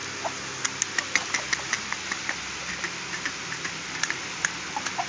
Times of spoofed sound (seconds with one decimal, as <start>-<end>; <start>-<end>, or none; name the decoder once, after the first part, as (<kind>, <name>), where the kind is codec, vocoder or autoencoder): none